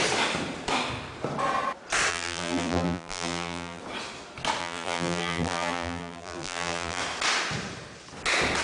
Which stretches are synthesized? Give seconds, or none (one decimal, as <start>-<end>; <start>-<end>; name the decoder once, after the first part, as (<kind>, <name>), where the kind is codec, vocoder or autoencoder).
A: 2.1-3.8 (vocoder, BigVGAN v2); 4.6-7.0